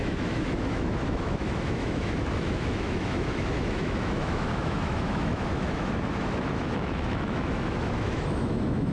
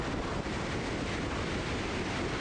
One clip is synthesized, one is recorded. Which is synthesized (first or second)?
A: first